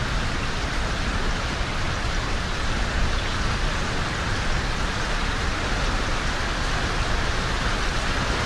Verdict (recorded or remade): recorded